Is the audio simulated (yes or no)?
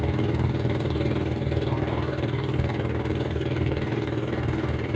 yes